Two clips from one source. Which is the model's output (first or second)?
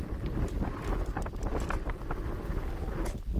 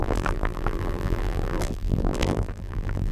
second